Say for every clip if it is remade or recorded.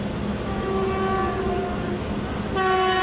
recorded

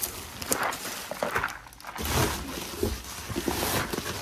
recorded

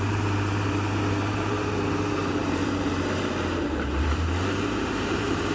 remade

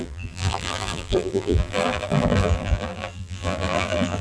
remade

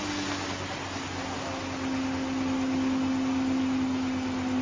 recorded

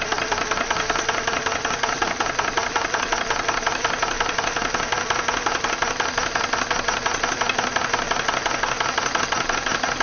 recorded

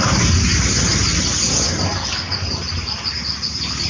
recorded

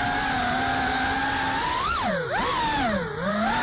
recorded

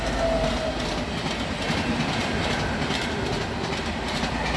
recorded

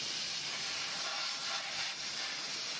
recorded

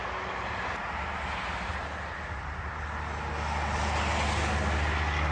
recorded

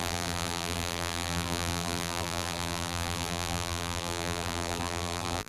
remade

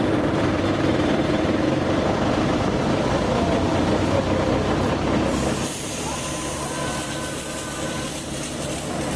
remade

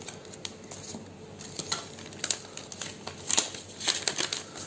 recorded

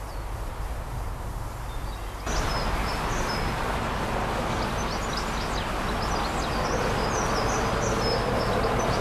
recorded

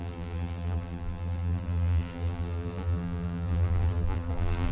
remade